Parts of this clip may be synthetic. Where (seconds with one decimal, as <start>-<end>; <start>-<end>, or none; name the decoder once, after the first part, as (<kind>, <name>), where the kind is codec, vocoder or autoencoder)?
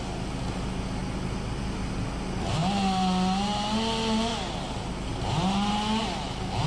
none